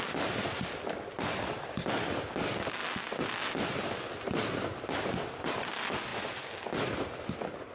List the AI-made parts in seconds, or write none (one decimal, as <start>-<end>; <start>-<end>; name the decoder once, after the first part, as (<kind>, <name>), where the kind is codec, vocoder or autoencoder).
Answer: 0.0-2.8 (vocoder, BigVGAN v2); 5.5-6.1; 6.9-7.7